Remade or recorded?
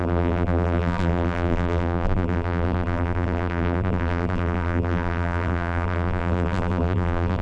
remade